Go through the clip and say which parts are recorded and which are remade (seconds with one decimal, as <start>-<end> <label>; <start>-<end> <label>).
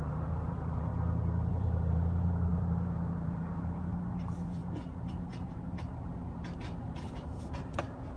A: 0.0-0.9 remade; 0.9-1.5 recorded; 1.5-8.2 remade